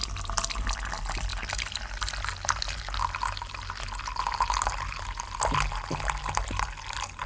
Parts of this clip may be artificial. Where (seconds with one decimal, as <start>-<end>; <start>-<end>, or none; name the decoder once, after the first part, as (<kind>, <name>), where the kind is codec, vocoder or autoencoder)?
none